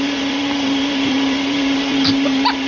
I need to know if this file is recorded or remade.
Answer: remade